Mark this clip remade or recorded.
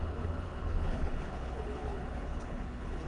remade